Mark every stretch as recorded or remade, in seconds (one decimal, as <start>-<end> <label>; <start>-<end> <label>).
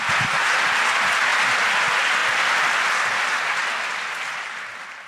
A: 0.0-5.1 recorded